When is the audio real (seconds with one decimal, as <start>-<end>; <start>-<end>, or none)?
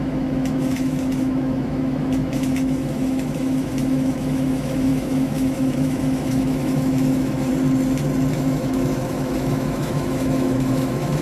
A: 7.5-8.3